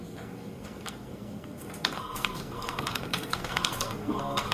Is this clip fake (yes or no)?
yes